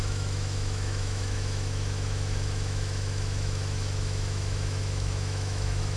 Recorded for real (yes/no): no